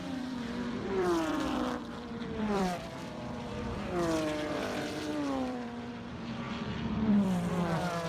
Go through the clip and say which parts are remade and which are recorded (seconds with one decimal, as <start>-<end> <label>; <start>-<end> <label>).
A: 0.0-8.1 remade